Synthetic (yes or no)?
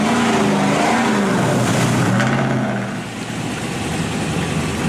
no